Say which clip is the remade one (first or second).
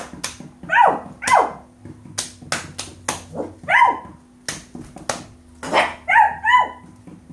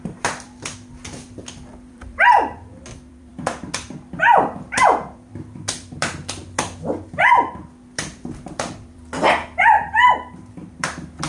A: second